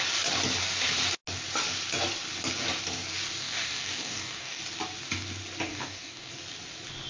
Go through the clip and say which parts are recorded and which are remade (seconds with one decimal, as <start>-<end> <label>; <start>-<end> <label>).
0.0-3.4 recorded; 3.4-4.6 remade; 4.6-5.7 recorded; 5.7-6.3 remade; 6.3-7.1 recorded